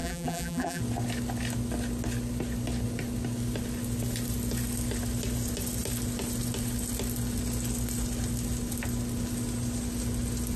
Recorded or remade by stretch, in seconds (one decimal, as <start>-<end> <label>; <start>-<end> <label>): 0.0-0.8 remade; 0.8-10.6 recorded